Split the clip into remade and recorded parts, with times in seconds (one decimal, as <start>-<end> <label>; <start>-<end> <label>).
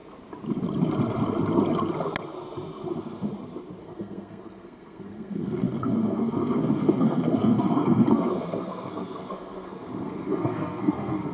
0.0-2.9 recorded; 2.9-3.3 remade; 3.3-3.8 recorded; 3.8-11.3 remade